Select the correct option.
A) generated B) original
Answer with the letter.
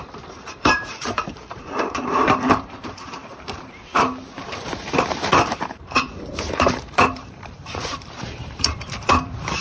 A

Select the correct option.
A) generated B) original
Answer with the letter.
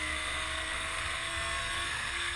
A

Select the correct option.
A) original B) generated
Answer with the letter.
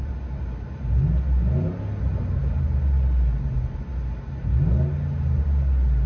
A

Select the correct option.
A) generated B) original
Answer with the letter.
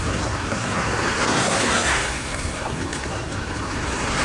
A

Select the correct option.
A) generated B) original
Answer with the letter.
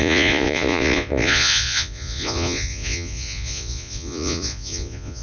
A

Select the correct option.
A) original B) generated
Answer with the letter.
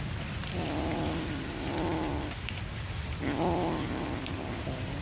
A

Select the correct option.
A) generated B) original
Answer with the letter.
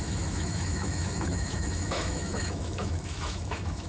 A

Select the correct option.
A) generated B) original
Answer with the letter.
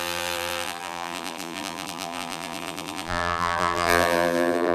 A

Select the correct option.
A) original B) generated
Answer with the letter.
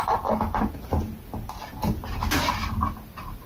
A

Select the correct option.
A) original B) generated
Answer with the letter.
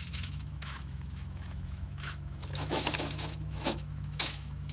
B